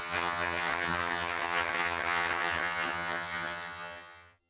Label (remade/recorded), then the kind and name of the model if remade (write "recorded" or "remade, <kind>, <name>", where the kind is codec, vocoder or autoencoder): remade, vocoder, HiFi-GAN